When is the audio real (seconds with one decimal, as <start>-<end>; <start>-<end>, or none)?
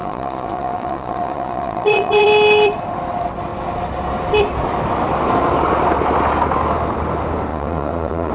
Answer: 2.2-7.5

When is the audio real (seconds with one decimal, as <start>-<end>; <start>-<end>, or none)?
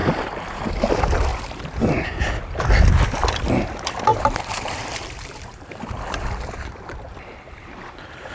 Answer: 0.7-4.1